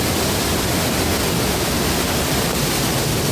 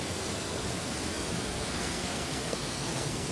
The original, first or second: first